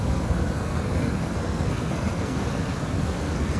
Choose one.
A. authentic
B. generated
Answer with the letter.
B